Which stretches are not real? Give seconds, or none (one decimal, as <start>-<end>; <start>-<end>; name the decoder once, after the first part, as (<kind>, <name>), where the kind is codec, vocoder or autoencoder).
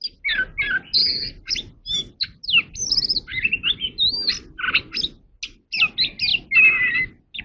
none